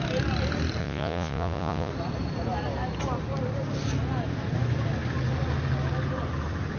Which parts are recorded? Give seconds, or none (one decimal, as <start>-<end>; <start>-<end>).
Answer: 0.0-0.8; 1.9-6.8